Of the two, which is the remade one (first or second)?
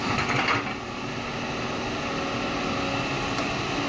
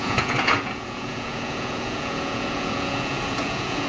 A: second